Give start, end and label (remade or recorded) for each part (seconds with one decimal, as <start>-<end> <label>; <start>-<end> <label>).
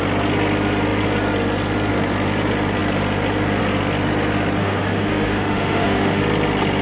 0.0-4.6 recorded; 4.6-6.2 remade; 6.2-6.8 recorded